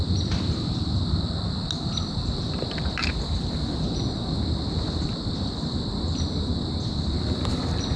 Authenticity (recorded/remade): remade